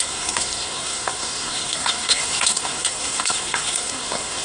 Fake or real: fake